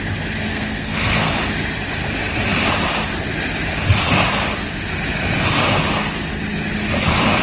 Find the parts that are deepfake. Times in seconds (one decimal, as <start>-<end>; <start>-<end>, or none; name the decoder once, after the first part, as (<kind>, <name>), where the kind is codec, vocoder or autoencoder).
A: 0.5-1.3 (codec, SNAC)